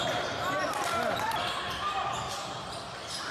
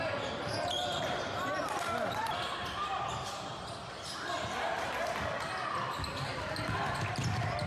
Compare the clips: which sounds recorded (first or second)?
first